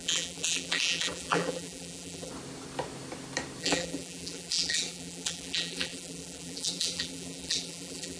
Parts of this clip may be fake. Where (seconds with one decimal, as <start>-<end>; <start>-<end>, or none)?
0.0-2.3; 3.6-8.2